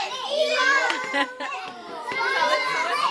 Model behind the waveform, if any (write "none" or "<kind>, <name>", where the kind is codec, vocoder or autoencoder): vocoder, BigVGAN v2